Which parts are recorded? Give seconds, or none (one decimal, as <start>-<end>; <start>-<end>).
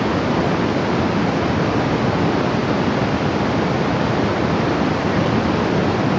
0.0-6.2